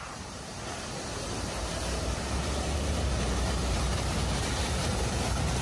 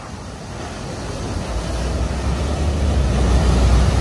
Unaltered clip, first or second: second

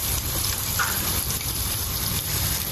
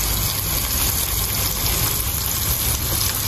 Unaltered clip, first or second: second